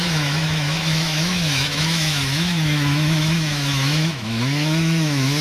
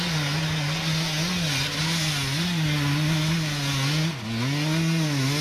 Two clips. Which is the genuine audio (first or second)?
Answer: second